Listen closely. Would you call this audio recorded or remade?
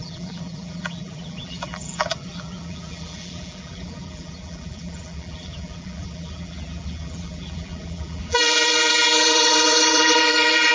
remade